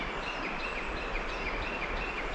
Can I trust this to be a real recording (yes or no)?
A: yes